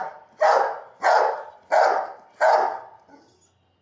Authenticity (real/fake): real